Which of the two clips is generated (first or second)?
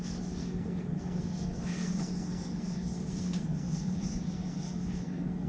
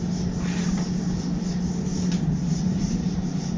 first